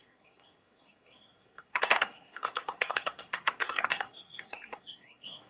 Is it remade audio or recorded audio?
remade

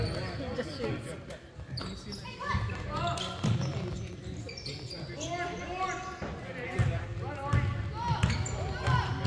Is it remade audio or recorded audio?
recorded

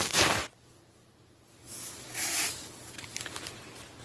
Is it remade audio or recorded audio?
recorded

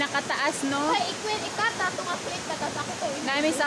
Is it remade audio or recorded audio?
recorded